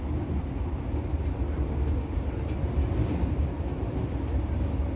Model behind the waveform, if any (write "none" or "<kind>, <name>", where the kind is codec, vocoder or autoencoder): none